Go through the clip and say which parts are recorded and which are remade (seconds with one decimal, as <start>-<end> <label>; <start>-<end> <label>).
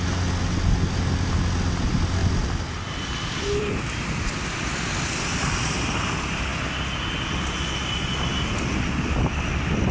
0.0-2.2 recorded; 2.2-3.8 remade; 3.8-9.9 recorded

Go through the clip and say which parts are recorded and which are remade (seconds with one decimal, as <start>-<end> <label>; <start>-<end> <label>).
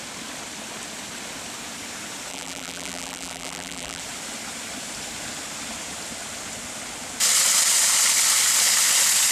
0.0-2.3 recorded; 2.3-4.0 remade; 4.0-9.3 recorded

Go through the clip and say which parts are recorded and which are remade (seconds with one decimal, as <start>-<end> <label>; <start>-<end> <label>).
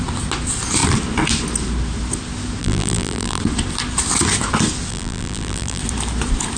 0.0-2.6 recorded; 2.6-3.4 remade; 3.4-4.9 recorded; 4.9-5.8 remade; 5.8-6.6 recorded